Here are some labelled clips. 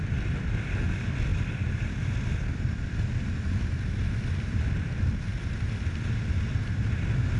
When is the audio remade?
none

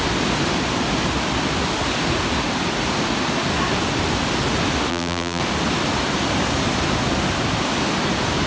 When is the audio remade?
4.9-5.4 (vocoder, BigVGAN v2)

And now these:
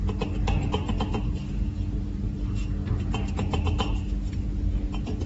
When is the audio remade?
none

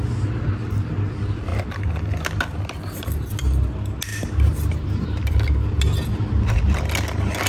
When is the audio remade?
4.1-5.3 (vocoder, BigVGAN v2)